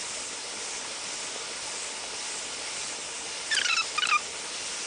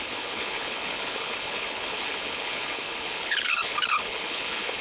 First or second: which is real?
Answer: first